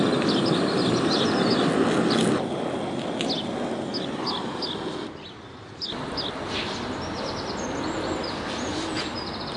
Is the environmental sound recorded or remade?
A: recorded